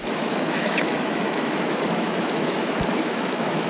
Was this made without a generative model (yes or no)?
no